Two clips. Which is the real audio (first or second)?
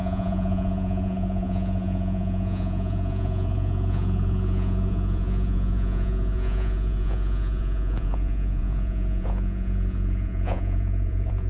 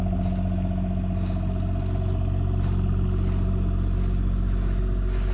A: second